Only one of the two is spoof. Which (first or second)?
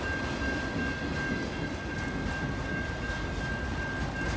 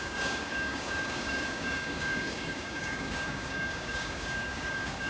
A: second